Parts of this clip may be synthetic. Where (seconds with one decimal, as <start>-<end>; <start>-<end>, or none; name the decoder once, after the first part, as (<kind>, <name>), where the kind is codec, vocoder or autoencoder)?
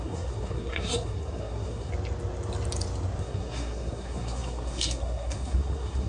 0.0-1.9 (codec, SNAC); 3.2-6.1